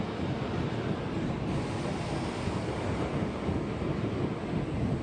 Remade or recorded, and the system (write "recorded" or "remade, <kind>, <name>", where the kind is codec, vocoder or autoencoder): recorded